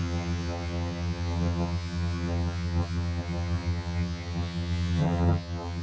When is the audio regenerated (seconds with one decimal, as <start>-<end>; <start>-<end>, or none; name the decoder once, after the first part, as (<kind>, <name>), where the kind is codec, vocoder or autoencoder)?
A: 0.0-5.8 (vocoder, HiFi-GAN)